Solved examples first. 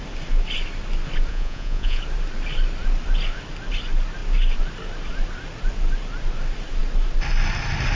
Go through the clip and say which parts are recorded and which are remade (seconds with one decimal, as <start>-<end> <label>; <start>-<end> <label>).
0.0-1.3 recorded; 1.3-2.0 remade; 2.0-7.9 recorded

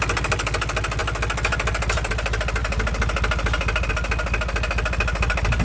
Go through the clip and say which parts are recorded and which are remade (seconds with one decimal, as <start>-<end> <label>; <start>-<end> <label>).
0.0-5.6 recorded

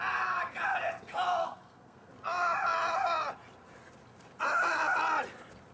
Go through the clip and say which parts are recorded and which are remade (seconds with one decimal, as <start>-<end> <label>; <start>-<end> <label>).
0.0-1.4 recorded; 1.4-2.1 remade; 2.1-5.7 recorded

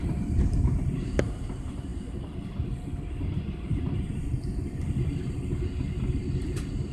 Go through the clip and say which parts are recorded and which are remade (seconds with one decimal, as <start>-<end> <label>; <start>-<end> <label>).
0.0-4.3 remade; 4.3-6.4 recorded; 6.4-6.9 remade